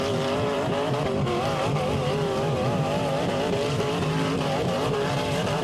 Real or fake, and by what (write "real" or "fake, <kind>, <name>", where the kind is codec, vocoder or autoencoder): fake, vocoder, BigVGAN v2